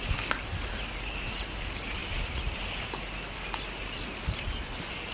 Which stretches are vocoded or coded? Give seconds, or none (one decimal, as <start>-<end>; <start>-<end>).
none